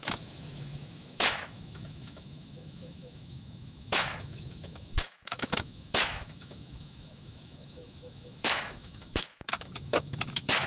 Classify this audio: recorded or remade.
remade